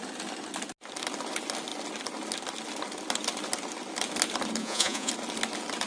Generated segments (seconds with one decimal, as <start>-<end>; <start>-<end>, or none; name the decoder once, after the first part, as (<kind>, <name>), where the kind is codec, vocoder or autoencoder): 4.6-5.1 (vocoder, Vocos)